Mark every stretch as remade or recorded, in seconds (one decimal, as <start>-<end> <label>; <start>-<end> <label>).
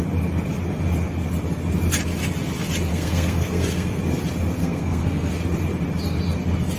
0.0-2.9 recorded; 2.9-4.0 remade; 4.0-4.6 recorded; 4.6-5.3 remade; 5.3-6.8 recorded